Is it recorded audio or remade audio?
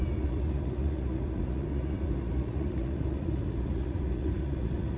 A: remade